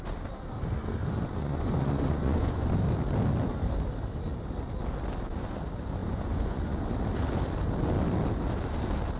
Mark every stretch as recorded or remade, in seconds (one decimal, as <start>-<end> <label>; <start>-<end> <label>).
0.0-1.4 recorded; 1.4-2.8 remade; 2.8-6.0 recorded; 6.0-6.8 remade; 6.8-9.2 recorded